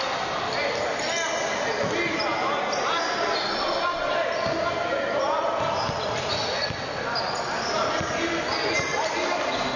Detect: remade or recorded recorded